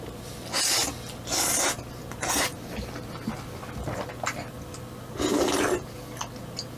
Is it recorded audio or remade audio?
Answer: recorded